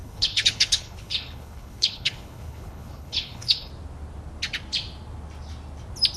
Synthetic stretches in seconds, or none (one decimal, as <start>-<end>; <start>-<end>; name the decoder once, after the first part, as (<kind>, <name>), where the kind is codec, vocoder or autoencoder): 0.0-3.7 (codec, HILCodec)